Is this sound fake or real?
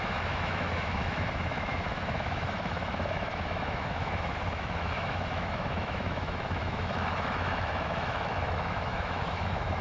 fake